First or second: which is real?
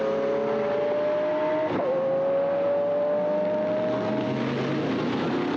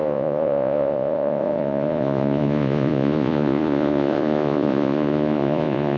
first